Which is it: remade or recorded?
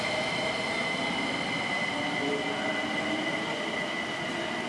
recorded